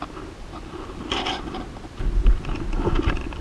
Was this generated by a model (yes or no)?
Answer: no